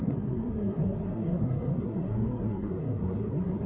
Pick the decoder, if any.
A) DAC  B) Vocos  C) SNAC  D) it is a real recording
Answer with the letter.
C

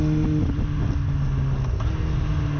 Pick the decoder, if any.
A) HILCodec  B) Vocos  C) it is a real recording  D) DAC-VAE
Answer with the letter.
C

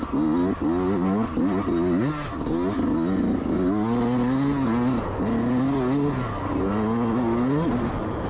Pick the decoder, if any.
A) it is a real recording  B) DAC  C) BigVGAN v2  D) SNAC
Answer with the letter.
A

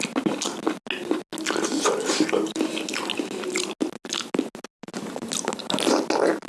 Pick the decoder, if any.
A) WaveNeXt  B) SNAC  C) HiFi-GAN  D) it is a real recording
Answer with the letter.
D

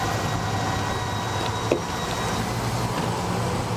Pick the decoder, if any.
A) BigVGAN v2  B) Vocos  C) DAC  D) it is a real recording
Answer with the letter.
D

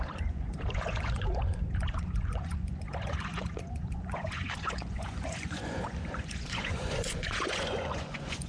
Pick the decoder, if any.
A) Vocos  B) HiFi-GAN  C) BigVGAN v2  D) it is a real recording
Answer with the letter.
A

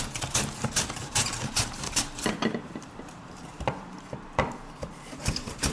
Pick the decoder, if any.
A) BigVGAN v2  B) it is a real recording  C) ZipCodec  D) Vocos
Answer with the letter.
A